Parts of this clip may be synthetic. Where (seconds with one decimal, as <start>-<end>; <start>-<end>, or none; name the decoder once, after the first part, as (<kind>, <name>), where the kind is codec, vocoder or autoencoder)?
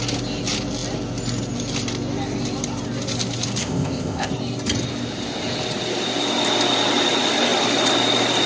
3.6-4.3 (codec, ZipCodec)